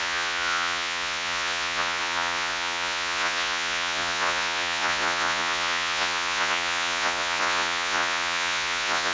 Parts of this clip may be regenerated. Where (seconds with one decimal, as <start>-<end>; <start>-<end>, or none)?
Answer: 0.0-9.1